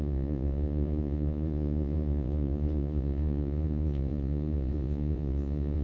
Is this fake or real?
fake